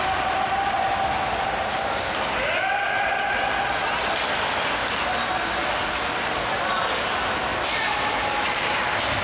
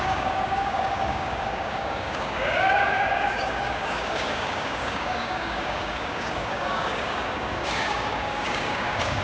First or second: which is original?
first